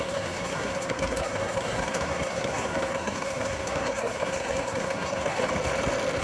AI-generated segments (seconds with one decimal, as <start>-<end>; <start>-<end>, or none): 0.0-5.4